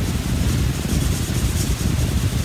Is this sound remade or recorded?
remade